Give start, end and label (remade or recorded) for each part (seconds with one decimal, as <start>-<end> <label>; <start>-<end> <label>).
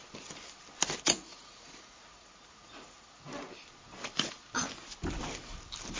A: 0.0-1.0 recorded; 1.0-3.3 remade; 3.3-6.0 recorded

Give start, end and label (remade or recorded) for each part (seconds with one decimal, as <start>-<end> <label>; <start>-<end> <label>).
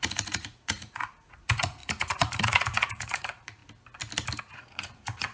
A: 0.0-3.6 remade; 3.6-4.4 recorded; 4.4-5.3 remade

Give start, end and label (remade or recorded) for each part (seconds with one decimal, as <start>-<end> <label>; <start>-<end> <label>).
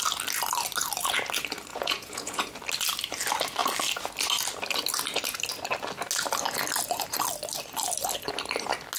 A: 0.0-1.7 recorded; 1.7-2.5 remade; 2.5-9.0 recorded